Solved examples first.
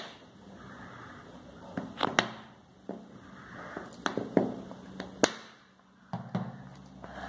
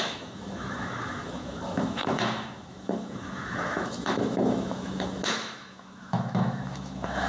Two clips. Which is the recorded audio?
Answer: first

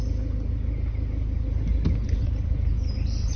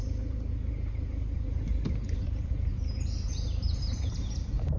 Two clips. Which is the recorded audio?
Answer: first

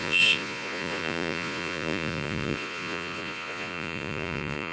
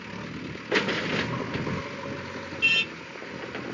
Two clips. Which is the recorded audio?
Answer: second